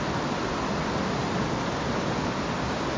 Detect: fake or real real